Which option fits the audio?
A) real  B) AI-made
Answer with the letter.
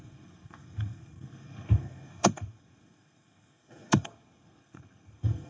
B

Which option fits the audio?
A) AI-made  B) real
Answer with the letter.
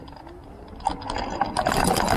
B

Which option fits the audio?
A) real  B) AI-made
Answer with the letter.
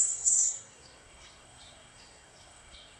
B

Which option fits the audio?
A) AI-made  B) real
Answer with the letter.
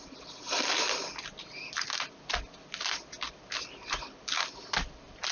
B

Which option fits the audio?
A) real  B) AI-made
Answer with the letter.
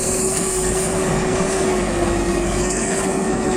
B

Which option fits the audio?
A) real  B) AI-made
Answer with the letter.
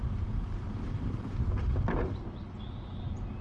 A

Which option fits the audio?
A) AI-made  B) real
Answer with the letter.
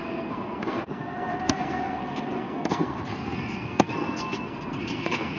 A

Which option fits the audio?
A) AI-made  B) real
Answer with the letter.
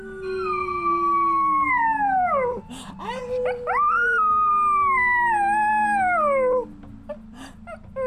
B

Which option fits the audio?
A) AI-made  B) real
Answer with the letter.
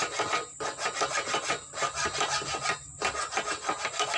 B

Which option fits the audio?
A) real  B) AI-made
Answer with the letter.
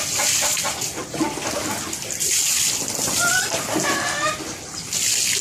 A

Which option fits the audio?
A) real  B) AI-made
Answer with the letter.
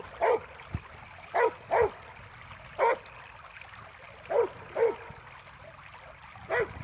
A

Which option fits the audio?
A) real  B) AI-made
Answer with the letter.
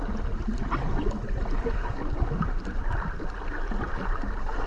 A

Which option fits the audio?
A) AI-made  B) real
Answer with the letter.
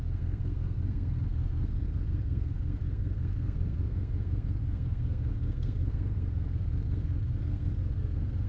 A